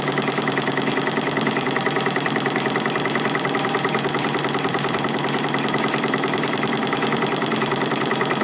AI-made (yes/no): yes